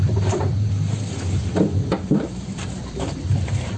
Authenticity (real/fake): fake